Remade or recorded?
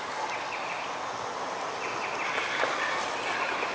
recorded